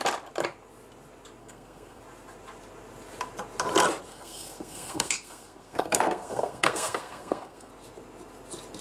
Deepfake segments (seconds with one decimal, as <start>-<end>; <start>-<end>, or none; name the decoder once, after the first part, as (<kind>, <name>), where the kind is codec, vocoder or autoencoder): 1.4-2.0 (codec, SNAC); 4.1-7.7